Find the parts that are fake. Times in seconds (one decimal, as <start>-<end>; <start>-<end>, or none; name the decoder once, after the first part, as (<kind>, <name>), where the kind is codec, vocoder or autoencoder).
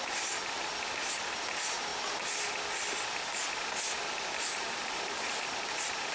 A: none